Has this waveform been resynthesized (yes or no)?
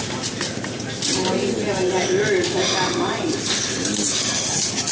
no